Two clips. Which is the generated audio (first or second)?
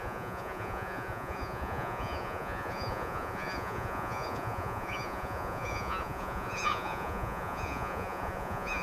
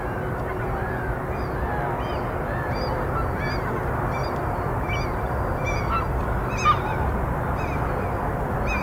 first